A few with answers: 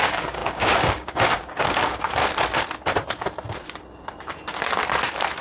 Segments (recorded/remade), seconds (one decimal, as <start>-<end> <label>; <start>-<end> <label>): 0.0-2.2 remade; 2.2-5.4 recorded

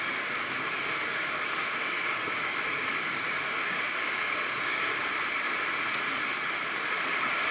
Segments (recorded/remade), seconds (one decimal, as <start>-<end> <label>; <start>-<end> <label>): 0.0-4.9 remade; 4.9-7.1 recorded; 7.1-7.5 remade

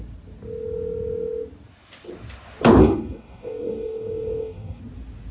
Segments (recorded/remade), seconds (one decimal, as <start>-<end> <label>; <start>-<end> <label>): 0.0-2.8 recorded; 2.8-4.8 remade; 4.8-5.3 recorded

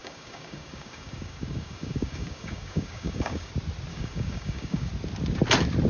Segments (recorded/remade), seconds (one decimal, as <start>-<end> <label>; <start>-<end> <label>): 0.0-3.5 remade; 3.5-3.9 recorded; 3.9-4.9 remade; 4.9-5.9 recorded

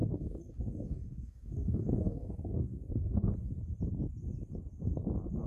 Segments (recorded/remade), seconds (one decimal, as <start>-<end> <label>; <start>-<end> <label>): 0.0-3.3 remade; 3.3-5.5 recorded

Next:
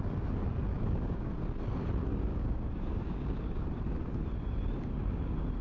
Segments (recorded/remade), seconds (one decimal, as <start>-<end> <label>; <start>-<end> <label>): 0.0-0.7 recorded; 0.7-1.3 remade; 1.3-2.3 recorded; 2.3-3.6 remade; 3.6-5.6 recorded

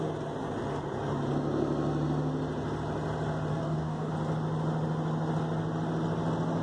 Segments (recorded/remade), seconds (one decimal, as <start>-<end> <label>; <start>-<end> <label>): 0.0-3.5 recorded; 3.5-4.1 remade; 4.1-6.6 recorded

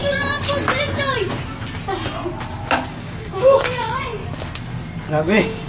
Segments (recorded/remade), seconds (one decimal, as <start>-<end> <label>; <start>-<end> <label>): 0.0-2.9 recorded; 2.9-4.2 remade; 4.2-5.1 recorded; 5.1-5.7 remade